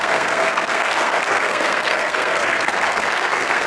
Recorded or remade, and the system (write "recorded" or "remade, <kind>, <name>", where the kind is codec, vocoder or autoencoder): remade, codec, SNAC